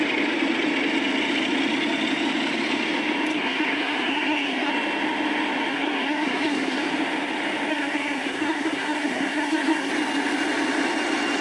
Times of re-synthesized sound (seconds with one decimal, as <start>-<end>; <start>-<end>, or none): 3.3-4.7; 5.7-6.8; 7.7-9.9